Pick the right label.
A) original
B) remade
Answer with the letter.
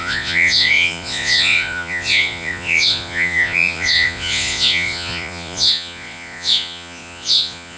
B